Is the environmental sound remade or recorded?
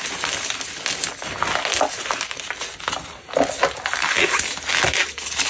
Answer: recorded